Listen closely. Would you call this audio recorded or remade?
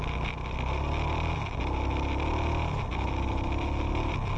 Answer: recorded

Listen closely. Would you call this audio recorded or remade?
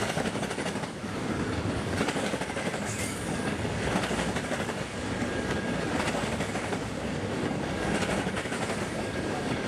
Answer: remade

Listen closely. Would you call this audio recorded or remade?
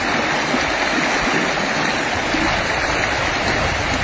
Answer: recorded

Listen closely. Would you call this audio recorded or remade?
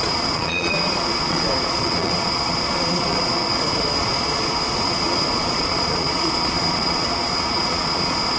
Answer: remade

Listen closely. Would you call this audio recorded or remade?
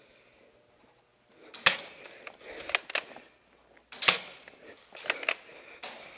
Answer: recorded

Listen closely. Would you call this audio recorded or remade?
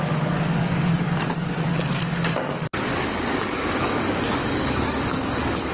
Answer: remade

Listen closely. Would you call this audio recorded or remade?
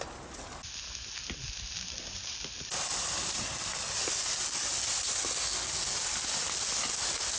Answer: recorded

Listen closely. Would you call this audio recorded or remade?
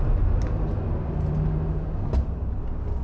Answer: recorded